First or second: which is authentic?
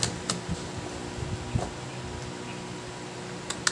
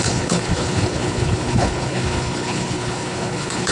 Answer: first